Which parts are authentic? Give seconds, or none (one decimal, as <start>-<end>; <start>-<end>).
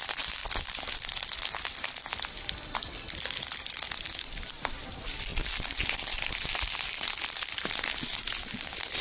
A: 0.0-0.4; 3.8-5.3; 7.7-9.0